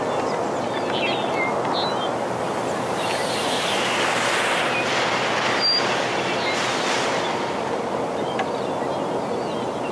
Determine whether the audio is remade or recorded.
recorded